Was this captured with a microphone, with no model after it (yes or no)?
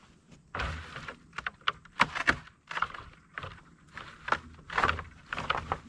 yes